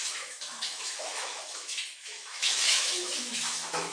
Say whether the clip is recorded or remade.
remade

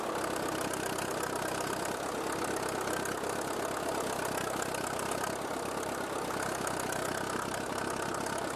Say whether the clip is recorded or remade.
recorded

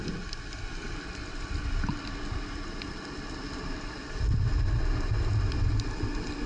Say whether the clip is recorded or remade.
recorded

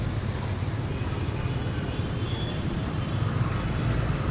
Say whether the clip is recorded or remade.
recorded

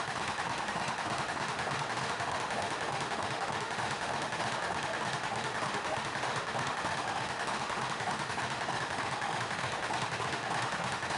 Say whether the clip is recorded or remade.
remade